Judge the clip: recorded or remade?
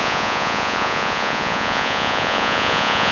remade